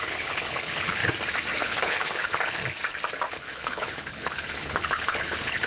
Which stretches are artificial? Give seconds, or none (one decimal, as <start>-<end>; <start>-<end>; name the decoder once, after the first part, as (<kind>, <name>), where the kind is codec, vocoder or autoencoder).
0.0-1.0 (codec, HILCodec); 1.6-2.6; 3.3-5.7